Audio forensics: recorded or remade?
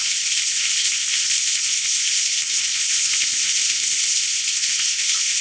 remade